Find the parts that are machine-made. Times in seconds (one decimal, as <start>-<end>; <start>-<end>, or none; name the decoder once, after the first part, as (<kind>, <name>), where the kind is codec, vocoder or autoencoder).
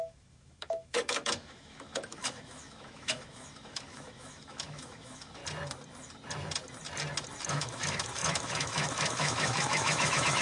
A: 0.0-5.4 (autoencoder, DAC-VAE); 7.5-10.4